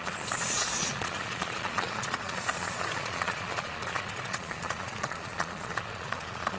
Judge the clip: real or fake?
fake